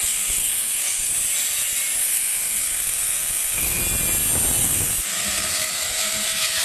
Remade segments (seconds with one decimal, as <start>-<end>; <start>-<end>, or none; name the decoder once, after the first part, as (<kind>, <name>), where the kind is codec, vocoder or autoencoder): 0.0-1.1 (codec, SNAC); 2.0-3.8; 4.6-6.6